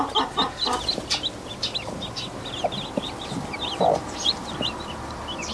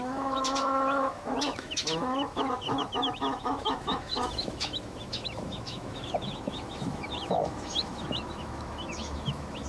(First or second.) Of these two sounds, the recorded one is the first